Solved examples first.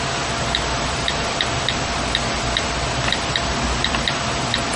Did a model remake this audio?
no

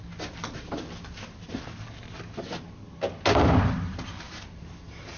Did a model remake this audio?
no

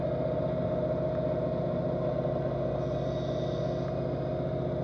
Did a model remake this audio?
no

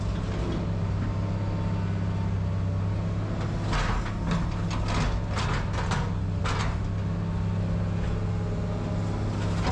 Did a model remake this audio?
no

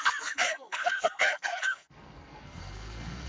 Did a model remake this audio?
yes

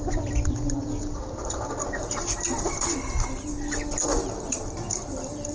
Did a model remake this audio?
no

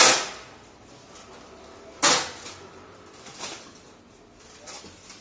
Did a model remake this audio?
no